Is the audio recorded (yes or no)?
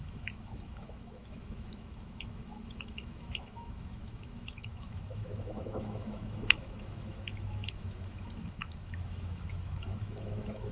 no